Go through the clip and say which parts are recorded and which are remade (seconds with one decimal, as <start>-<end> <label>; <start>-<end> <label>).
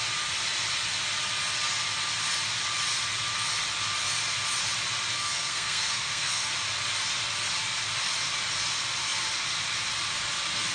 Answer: 0.0-5.1 recorded; 5.1-6.5 remade; 6.5-10.7 recorded